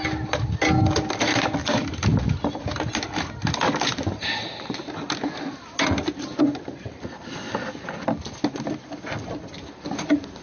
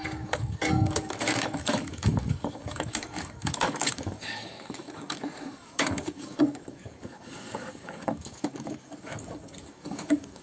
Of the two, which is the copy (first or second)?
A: second